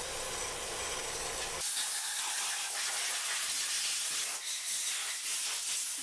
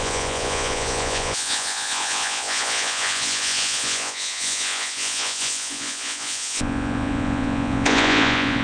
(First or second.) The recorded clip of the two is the first